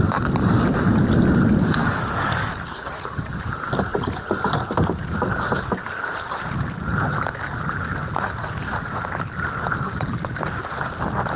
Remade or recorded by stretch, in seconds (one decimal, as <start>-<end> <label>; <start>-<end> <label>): 0.0-1.8 recorded; 1.8-2.5 remade; 2.5-11.4 recorded

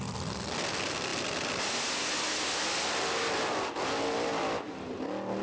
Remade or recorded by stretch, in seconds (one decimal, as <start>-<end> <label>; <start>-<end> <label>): 0.0-5.4 recorded